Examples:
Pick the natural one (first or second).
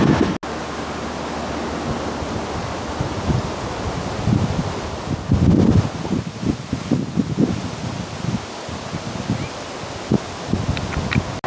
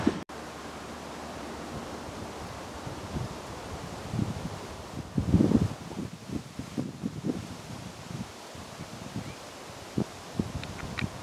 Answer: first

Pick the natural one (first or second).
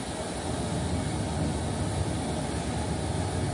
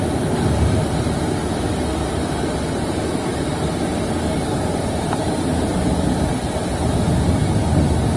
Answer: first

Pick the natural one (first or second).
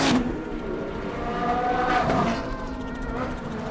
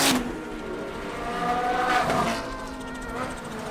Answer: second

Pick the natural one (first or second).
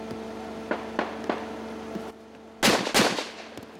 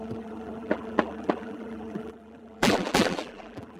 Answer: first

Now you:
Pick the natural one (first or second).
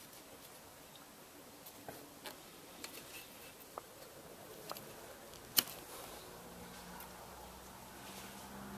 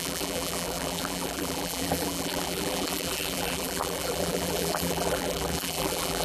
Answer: first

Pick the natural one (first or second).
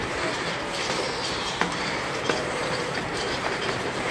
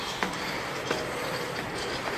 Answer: second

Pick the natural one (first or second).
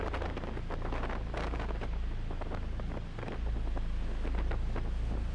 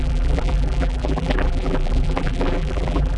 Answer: first